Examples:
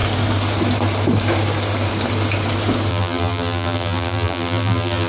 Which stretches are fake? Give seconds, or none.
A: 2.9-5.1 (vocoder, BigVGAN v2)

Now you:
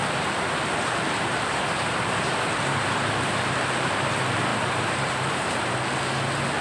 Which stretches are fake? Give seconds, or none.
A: 0.0-4.0 (vocoder, BigVGAN v2); 4.5-5.7

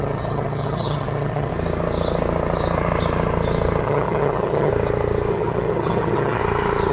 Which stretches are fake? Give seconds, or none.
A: 0.0-1.5 (vocoder, HiFi-GAN); 3.8-4.7; 5.3-6.4

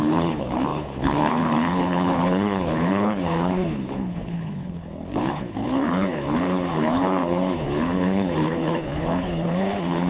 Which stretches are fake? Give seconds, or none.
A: 0.0-10.1 (codec, HILCodec)

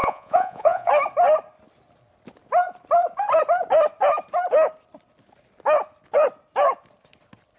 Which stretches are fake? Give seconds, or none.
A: 0.0-0.9 (vocoder, Vocos)